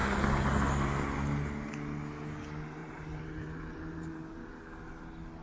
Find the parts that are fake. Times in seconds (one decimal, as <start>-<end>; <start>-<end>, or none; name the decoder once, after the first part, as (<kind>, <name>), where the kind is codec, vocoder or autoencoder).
2.8-4.4 (vocoder, BigVGAN v2)